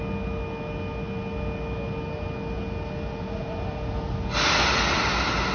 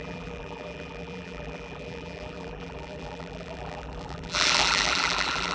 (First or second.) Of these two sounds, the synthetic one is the second